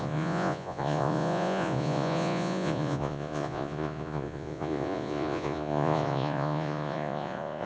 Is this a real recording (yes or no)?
no